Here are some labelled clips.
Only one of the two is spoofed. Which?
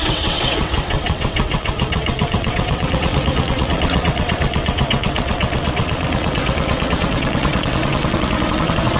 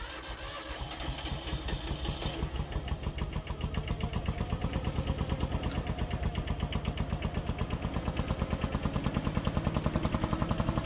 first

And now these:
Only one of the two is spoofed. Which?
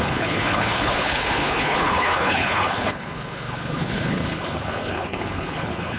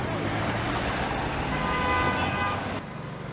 first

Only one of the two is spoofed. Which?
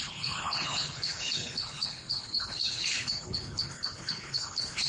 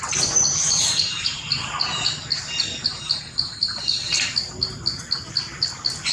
first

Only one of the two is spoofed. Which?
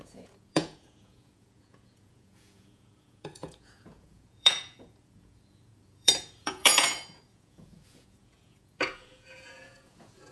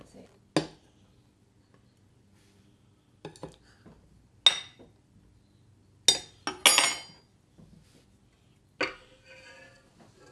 first